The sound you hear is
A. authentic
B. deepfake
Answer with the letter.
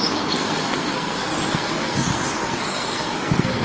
B